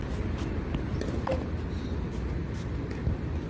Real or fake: real